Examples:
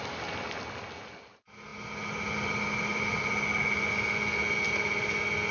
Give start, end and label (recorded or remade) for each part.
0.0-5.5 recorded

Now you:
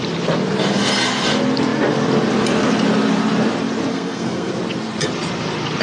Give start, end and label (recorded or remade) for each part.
0.0-3.9 recorded; 3.9-4.5 remade; 4.5-5.8 recorded